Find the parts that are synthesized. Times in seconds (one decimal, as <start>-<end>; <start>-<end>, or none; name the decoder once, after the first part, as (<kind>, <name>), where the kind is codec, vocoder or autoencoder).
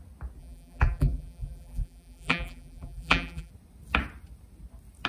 0.4-3.5 (vocoder, BigVGAN v2)